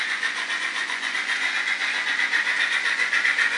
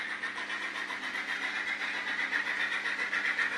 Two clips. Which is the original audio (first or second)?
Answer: second